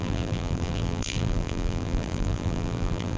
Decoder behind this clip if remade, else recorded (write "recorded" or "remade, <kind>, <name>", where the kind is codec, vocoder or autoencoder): remade, vocoder, BigVGAN v2